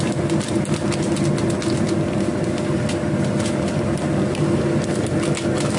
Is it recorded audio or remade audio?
recorded